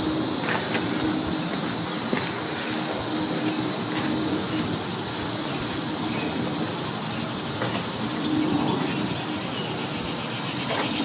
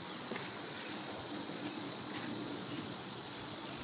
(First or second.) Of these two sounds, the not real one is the second